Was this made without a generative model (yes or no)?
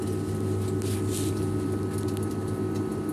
yes